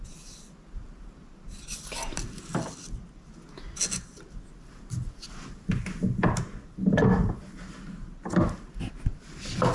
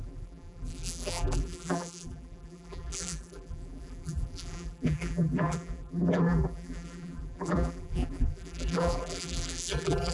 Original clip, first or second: first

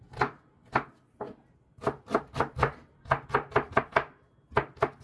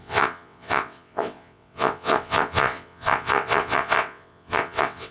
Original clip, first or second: first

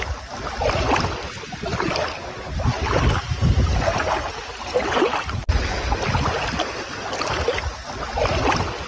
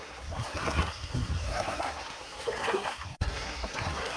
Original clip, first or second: first